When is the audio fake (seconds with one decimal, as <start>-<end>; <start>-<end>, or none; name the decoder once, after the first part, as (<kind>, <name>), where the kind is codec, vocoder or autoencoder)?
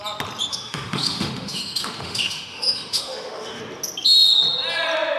0.5-3.6 (autoencoder, DAC-VAE)